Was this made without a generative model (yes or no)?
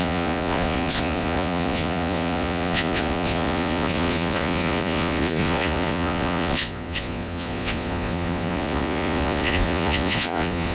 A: no